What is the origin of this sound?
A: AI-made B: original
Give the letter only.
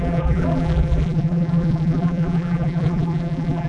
A